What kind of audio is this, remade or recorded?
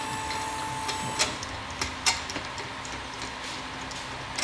recorded